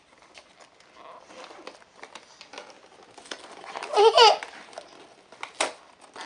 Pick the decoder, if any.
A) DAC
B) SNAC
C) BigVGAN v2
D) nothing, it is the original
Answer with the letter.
D